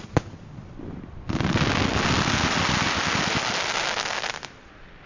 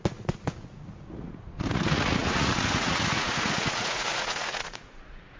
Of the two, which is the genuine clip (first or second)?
first